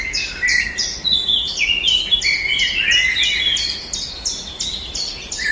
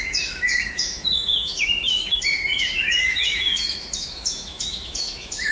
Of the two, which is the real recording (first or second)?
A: first